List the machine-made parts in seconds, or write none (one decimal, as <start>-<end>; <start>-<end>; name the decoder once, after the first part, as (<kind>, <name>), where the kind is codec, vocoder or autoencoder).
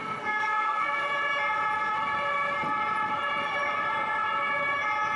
0.0-1.0 (codec, SNAC)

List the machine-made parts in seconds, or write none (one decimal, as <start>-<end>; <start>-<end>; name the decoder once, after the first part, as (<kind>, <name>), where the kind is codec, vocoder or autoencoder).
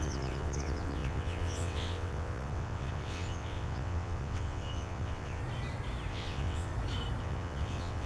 0.0-5.4 (vocoder, WaveNeXt); 6.1-6.7; 7.2-8.1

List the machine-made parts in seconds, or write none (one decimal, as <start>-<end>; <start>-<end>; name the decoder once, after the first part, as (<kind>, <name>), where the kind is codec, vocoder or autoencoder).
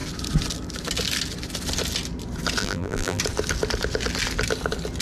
2.6-3.2 (vocoder, BigVGAN v2)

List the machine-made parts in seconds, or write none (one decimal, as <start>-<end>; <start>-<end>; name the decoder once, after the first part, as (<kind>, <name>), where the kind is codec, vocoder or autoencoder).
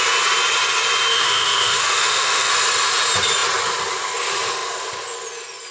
1.1-2.5 (autoencoder, DAC-VAE)